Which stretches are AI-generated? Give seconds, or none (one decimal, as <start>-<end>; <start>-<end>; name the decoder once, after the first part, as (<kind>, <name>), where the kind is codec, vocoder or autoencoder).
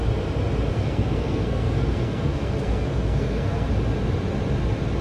0.7-3.7 (codec, SNAC)